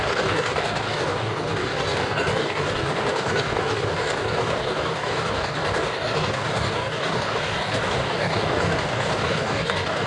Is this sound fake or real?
fake